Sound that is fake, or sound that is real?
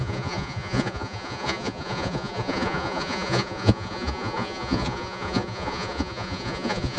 fake